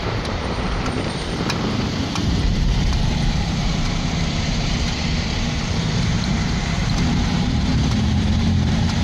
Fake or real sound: fake